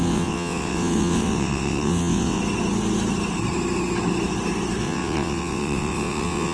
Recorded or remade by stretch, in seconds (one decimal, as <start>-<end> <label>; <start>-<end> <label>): 0.0-2.4 remade; 2.4-4.8 recorded; 4.8-6.5 remade